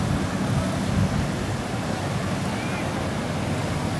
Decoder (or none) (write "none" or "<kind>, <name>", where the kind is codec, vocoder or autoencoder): none